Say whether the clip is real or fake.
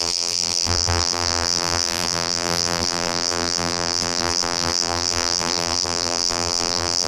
fake